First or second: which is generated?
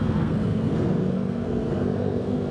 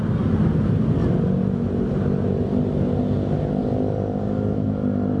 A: first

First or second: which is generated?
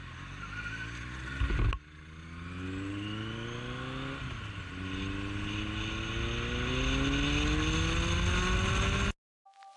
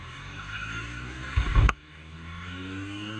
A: second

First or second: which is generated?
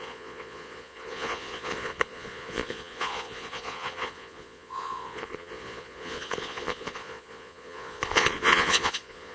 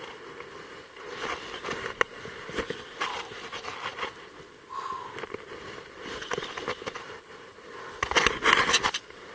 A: first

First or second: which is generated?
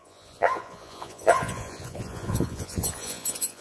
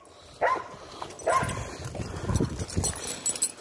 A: first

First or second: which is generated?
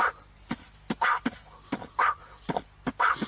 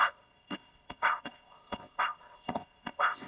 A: second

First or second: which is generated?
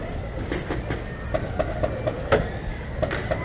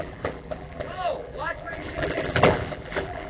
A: second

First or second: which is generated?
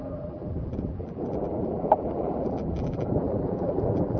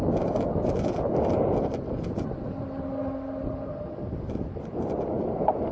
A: first